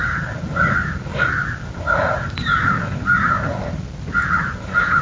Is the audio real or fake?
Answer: real